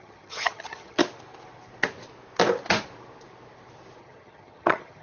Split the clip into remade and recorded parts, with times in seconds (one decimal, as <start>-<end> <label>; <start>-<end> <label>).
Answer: 0.0-1.0 remade; 1.0-4.0 recorded; 4.0-5.0 remade